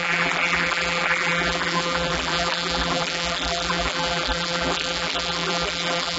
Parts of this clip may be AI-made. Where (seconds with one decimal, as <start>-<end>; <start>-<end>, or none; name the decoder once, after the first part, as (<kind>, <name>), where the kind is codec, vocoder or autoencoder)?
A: 0.0-6.2 (vocoder, BigVGAN v2)